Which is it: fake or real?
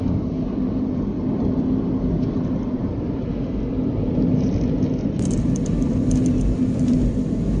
fake